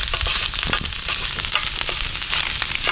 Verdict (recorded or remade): recorded